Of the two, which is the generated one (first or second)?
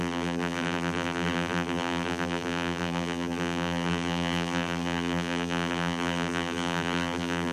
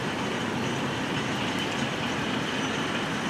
first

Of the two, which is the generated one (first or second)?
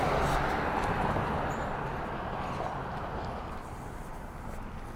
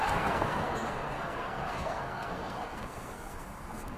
second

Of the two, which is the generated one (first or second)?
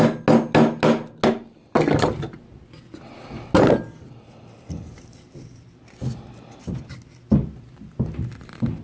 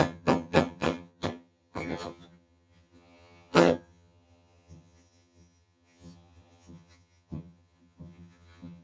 second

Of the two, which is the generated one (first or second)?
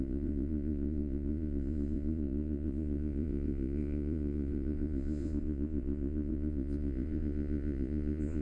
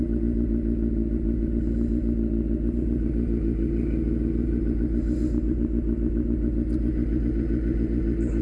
first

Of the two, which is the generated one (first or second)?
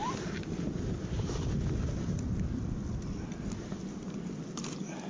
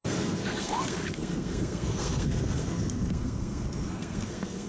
second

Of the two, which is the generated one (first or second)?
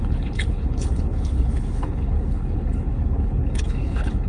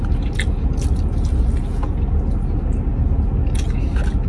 first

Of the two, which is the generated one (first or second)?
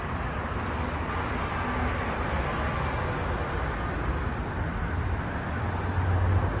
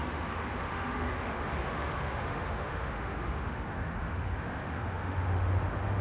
second